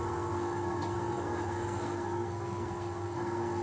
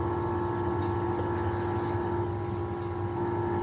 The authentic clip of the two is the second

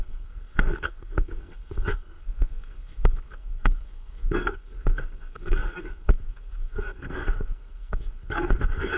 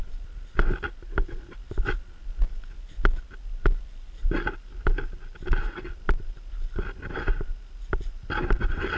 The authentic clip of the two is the second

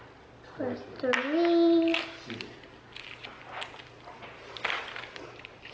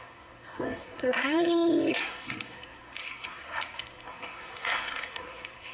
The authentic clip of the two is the first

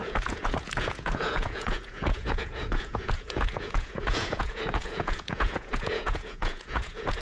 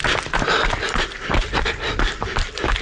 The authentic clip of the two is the second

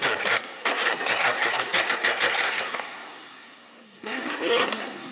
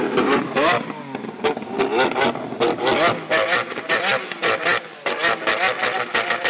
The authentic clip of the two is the second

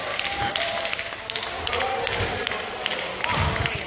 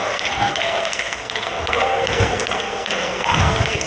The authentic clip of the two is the first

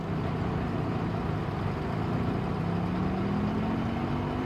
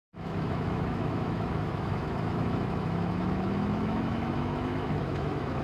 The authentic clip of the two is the first